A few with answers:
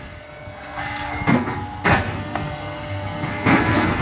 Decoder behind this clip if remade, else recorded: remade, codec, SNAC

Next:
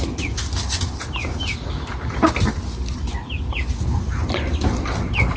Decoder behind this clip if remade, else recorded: recorded